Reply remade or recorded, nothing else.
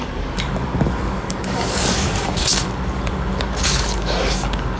remade